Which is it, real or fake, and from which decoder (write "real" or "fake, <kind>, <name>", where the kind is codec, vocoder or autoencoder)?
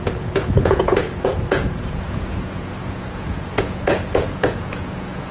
fake, vocoder, Vocos